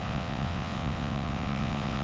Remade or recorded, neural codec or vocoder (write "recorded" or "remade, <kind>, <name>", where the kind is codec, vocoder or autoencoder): remade, vocoder, WaveNeXt